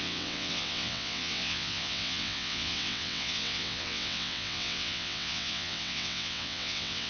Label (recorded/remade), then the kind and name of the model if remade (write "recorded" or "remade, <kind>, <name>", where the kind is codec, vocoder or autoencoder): remade, vocoder, WaveNeXt